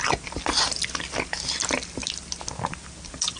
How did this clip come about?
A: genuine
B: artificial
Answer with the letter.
A